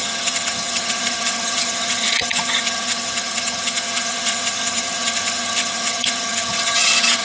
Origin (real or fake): fake